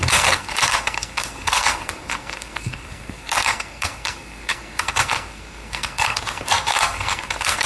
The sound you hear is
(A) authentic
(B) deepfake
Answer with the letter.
B